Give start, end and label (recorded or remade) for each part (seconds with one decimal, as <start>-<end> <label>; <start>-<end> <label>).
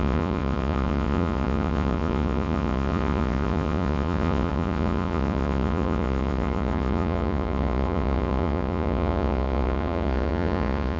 0.0-11.0 remade